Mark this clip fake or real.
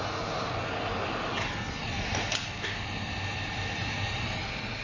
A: real